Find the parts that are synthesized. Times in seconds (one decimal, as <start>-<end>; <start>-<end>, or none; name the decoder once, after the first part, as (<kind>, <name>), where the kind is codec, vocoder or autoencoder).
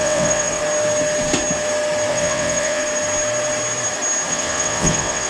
0.0-0.6 (vocoder, WaveNeXt); 2.1-2.8; 4.3-5.3